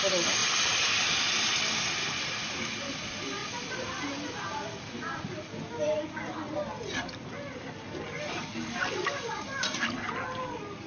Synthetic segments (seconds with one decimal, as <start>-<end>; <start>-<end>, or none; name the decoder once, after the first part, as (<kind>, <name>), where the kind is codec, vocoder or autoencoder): none